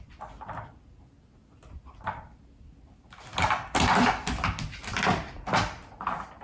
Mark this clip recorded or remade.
recorded